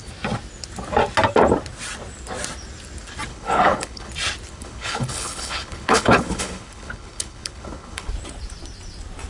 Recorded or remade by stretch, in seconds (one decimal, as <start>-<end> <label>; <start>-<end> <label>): 0.0-3.3 recorded; 3.3-4.1 remade; 4.1-4.5 recorded; 4.5-8.1 remade; 8.1-9.3 recorded